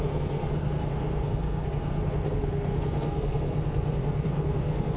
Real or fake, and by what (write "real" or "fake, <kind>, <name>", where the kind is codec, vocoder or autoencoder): fake, codec, SNAC